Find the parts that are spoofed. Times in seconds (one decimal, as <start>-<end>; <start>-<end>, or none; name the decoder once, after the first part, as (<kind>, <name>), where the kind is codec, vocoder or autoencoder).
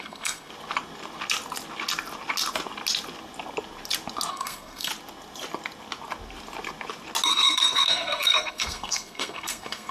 0.0-0.5 (codec, SNAC); 4.3-4.9; 7.3-9.9